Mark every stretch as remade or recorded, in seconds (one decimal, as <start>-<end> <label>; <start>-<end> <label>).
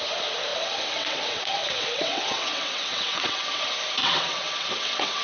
0.0-0.5 recorded; 0.5-3.6 remade; 3.6-4.0 recorded; 4.0-5.2 remade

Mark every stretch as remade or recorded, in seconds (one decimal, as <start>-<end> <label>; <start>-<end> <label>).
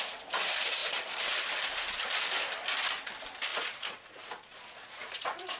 0.0-3.5 recorded; 3.5-5.6 remade